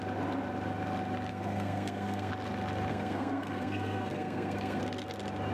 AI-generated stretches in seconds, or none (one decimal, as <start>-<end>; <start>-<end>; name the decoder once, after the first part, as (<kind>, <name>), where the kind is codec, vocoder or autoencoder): 1.3-2.3 (codec, SNAC); 2.9-4.8